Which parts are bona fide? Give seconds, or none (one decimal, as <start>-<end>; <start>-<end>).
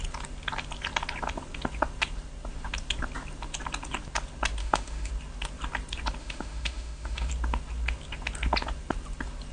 0.0-4.6; 5.1-6.2; 7.3-9.5